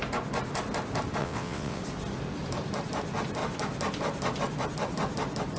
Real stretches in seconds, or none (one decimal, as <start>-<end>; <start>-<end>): 0.0-1.2; 1.8-5.6